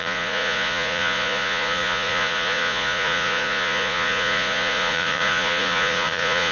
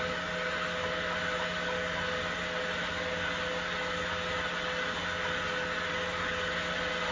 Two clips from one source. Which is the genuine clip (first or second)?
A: second